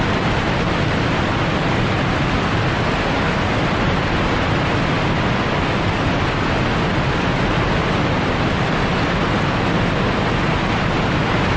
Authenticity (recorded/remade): recorded